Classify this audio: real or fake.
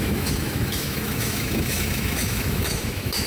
fake